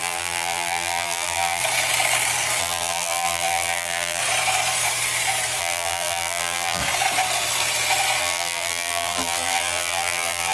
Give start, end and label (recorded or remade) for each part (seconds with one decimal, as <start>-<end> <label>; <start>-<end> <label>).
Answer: 0.0-1.6 remade; 1.6-2.6 recorded; 2.6-4.2 remade; 4.2-5.6 recorded; 5.6-6.8 remade; 6.8-8.2 recorded; 8.2-10.5 remade